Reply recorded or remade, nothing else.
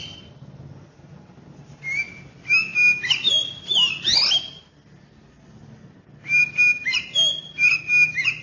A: recorded